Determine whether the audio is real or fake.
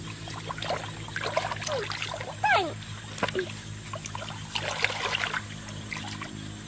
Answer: real